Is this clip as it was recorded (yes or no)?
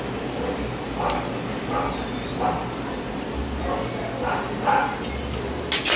yes